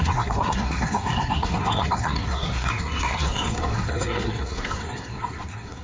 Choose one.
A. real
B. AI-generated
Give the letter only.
B